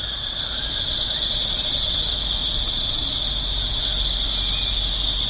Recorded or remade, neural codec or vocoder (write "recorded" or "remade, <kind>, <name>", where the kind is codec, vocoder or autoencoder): recorded